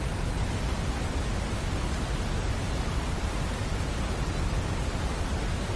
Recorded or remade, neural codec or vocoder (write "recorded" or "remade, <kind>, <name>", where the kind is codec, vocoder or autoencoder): recorded